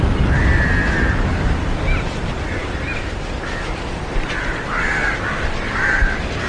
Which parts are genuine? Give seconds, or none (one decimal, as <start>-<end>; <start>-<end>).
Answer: 0.0-6.5